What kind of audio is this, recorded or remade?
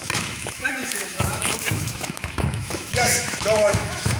remade